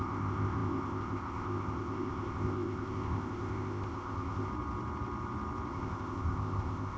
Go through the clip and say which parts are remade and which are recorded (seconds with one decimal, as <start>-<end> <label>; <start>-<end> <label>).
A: 0.0-4.5 remade; 4.5-5.7 recorded; 5.7-7.0 remade